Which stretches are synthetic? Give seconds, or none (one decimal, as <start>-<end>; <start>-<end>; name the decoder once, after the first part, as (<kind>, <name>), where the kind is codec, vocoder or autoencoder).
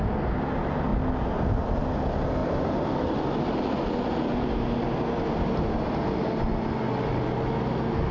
none